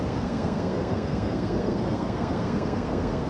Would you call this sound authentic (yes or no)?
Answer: no